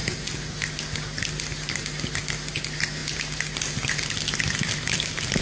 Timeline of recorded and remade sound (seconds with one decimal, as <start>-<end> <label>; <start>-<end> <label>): 0.0-5.4 recorded